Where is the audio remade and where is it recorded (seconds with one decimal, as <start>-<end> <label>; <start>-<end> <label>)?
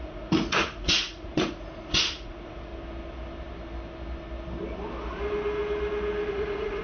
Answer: 0.0-2.7 remade; 2.7-6.3 recorded; 6.3-6.8 remade